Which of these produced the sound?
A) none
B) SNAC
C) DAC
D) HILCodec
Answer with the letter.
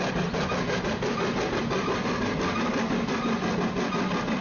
A